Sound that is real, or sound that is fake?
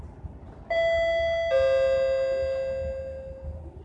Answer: real